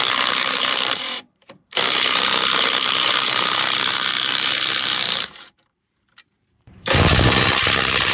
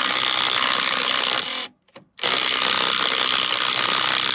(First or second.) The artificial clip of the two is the first